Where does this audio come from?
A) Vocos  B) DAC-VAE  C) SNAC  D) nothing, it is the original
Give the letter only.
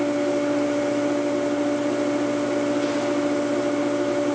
D